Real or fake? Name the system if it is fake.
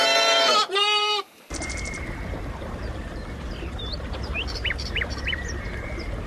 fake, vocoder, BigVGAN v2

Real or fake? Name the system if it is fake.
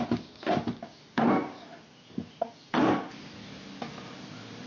fake, vocoder, BigVGAN v2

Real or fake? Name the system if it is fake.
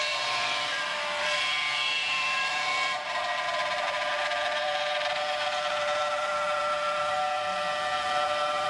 fake, vocoder, BigVGAN v2